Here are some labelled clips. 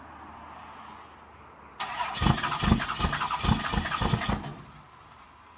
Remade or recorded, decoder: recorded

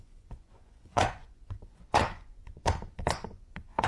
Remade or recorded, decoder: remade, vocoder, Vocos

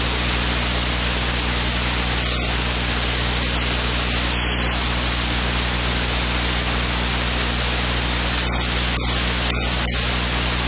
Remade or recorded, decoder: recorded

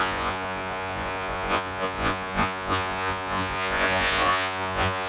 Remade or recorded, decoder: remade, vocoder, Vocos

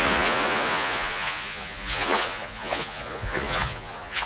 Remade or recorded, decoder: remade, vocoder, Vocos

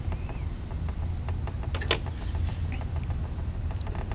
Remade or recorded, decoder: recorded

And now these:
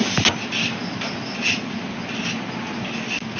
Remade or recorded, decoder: recorded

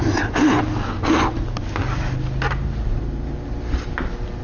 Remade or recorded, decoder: recorded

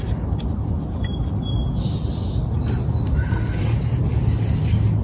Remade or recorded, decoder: recorded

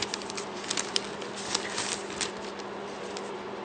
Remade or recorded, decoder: recorded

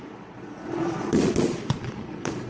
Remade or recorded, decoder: remade, vocoder, Vocos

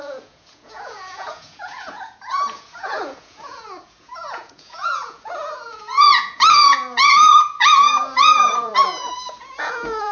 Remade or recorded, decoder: remade, vocoder, Vocos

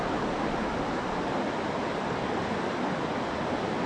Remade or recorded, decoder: recorded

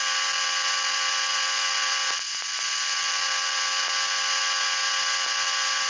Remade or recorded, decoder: recorded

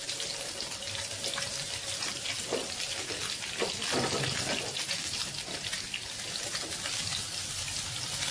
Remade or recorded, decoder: recorded